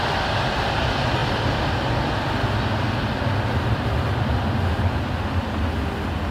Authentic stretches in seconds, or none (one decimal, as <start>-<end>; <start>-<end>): 0.0-6.3